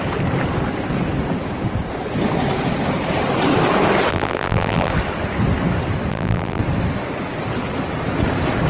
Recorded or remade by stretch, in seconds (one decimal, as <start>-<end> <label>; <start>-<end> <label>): 0.0-4.1 recorded; 4.1-4.9 remade; 4.9-6.1 recorded; 6.1-6.6 remade; 6.6-8.7 recorded